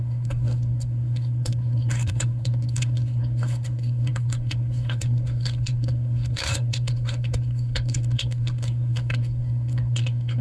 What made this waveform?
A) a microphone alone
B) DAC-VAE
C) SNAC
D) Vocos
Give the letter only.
C